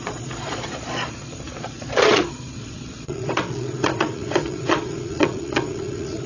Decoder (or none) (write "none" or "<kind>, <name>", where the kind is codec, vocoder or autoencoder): vocoder, Vocos